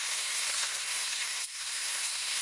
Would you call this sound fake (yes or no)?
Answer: yes